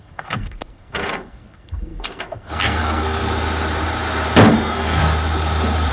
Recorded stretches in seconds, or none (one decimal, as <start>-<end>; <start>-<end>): 3.2-4.5; 5.0-5.9